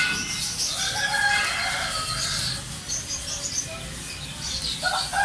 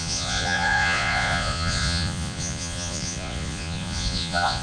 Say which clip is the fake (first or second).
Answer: second